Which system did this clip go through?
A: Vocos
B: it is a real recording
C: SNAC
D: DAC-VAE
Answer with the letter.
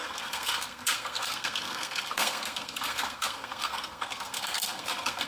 C